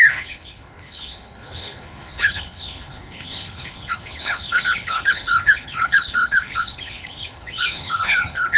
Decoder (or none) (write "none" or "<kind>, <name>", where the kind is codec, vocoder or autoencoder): codec, HILCodec